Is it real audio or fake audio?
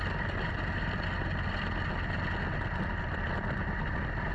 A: real